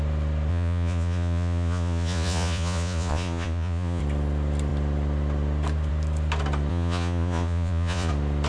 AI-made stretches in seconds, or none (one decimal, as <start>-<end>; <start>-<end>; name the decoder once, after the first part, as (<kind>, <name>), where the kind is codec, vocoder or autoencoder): 0.5-4.0 (vocoder, Vocos); 6.7-8.1